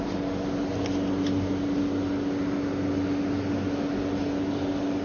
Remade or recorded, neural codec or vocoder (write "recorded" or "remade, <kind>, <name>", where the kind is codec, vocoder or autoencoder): recorded